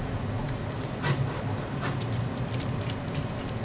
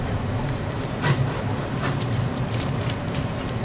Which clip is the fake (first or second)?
second